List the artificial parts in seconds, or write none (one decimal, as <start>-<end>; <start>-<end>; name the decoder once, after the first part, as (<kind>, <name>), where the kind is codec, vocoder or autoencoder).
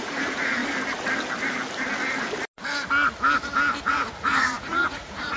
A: 0.0-0.6 (vocoder, Vocos); 3.8-5.4